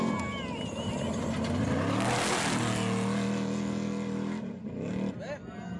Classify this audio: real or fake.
real